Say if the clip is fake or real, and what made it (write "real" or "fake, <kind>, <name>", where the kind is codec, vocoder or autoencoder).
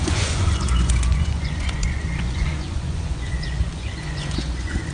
fake, vocoder, Vocos